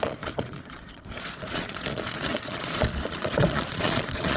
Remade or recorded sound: remade